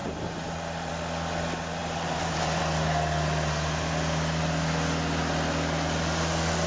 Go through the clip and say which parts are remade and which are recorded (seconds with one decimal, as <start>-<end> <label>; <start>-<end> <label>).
0.0-0.9 remade; 0.9-1.8 recorded; 1.8-2.6 remade; 2.6-6.7 recorded

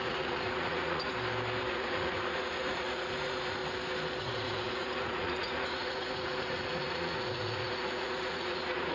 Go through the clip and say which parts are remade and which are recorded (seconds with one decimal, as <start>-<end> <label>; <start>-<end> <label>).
0.0-1.1 remade; 1.1-1.7 recorded; 1.7-3.6 remade; 3.6-4.2 recorded; 4.2-8.9 remade

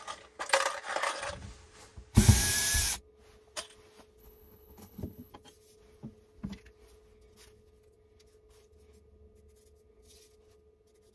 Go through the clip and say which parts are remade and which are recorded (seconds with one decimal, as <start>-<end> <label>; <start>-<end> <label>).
0.0-4.2 recorded; 4.2-5.3 remade; 5.3-11.1 recorded

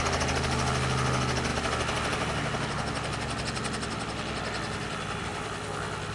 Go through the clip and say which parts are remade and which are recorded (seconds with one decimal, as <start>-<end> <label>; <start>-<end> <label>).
0.0-6.1 recorded